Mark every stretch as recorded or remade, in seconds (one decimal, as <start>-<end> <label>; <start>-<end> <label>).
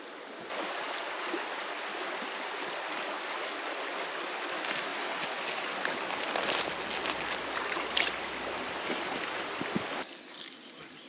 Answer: 0.0-11.1 recorded